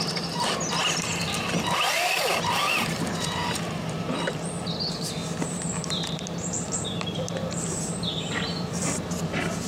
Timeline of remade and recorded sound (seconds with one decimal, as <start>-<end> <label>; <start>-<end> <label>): 0.0-2.6 recorded; 2.6-4.8 remade; 4.8-5.2 recorded; 5.2-9.7 remade